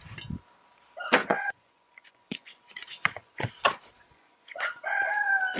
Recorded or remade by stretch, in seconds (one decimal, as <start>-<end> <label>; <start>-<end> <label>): 0.0-1.2 recorded; 1.2-3.5 remade; 3.5-4.1 recorded; 4.1-4.8 remade; 4.8-5.6 recorded

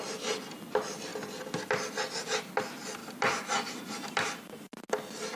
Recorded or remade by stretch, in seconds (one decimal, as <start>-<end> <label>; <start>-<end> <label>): 0.0-3.0 recorded; 3.0-4.4 remade; 4.4-5.4 recorded

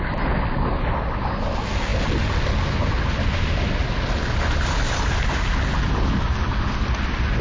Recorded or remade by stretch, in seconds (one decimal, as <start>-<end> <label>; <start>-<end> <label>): 0.0-7.4 recorded

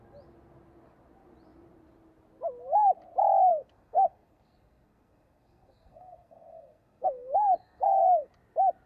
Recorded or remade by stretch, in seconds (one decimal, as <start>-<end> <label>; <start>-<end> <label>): 0.0-3.5 recorded; 3.5-8.3 remade; 8.3-8.9 recorded